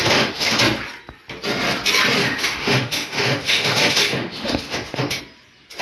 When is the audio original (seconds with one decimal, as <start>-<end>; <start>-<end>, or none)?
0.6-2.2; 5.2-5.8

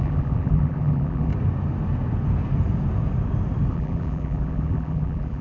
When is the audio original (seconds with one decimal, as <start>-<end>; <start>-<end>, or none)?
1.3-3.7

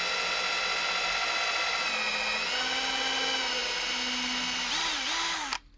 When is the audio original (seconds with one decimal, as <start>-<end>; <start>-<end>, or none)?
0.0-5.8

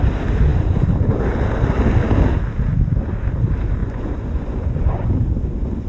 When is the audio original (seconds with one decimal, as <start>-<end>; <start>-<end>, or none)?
0.0-3.8; 5.1-5.9